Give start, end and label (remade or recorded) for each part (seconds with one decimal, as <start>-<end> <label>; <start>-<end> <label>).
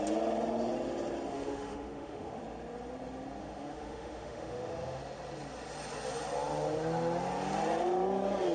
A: 0.0-1.3 recorded; 1.3-2.4 remade; 2.4-3.4 recorded; 3.4-5.0 remade; 5.0-8.5 recorded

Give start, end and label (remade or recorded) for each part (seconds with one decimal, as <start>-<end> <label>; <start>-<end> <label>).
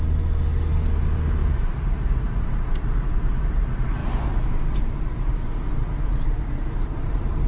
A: 0.0-1.4 recorded; 1.4-3.4 remade; 3.4-5.3 recorded; 5.3-7.5 remade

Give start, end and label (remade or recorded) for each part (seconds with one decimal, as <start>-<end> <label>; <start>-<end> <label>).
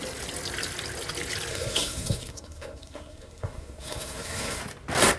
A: 0.0-1.5 recorded; 1.5-4.6 remade; 4.6-5.2 recorded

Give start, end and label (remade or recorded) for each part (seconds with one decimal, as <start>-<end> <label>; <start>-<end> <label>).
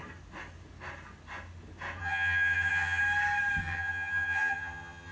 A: 0.0-2.0 recorded; 2.0-3.0 remade; 3.0-3.6 recorded; 3.6-5.1 remade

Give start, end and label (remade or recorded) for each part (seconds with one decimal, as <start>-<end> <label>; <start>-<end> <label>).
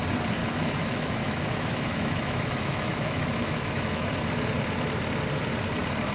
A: 0.0-0.4 recorded; 0.4-4.1 remade; 4.1-6.1 recorded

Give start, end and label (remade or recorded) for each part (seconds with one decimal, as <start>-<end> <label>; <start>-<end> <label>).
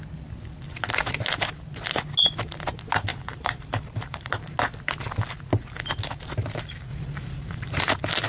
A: 0.0-3.1 recorded; 3.1-4.3 remade; 4.3-6.9 recorded; 6.9-7.8 remade; 7.8-8.3 recorded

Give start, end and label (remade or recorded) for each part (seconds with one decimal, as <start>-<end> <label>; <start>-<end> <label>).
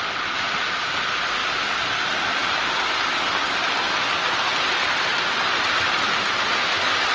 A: 0.0-1.4 recorded; 1.4-2.4 remade; 2.4-5.1 recorded; 5.1-6.2 remade; 6.2-7.1 recorded